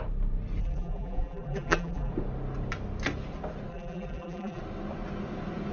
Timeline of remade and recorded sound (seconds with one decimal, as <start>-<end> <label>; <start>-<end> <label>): 0.0-0.6 recorded; 0.6-2.1 remade; 2.1-3.7 recorded; 3.7-4.6 remade; 4.6-5.7 recorded